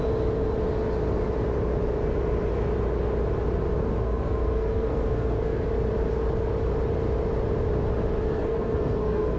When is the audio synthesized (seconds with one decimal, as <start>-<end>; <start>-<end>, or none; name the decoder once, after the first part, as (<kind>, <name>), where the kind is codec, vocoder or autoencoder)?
3.8-5.7 (codec, SNAC); 8.3-9.4